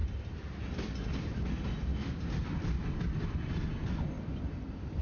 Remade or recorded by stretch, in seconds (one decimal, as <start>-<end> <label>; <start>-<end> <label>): 0.0-5.0 recorded